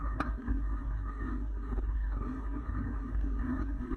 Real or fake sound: fake